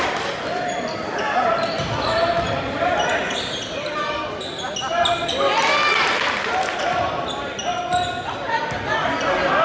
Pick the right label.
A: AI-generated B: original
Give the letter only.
B